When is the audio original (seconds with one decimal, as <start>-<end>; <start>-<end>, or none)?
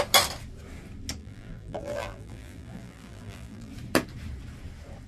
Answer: 0.0-1.2; 3.7-5.1